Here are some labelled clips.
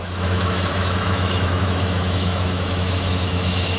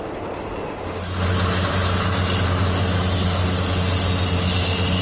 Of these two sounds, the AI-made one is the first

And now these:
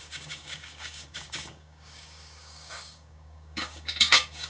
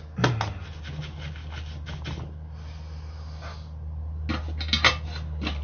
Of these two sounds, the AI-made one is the first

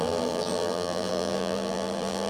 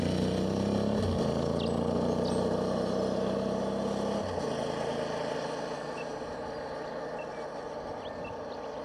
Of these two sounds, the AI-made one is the first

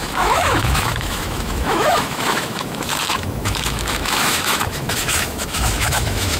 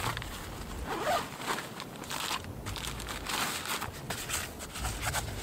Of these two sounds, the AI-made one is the first